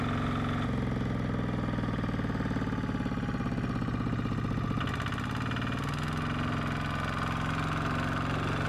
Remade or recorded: recorded